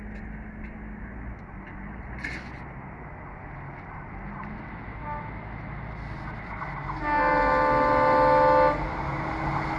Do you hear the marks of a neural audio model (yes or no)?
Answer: no